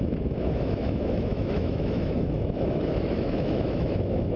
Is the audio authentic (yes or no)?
no